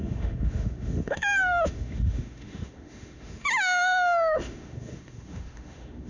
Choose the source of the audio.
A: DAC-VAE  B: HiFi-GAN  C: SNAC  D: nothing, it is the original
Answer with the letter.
A